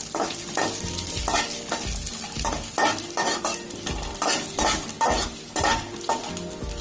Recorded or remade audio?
recorded